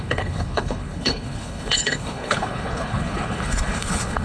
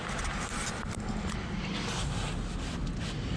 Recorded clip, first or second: second